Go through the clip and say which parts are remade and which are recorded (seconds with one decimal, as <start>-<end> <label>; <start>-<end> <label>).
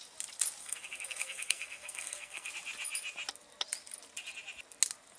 0.0-0.6 recorded; 0.6-2.5 remade; 2.5-5.2 recorded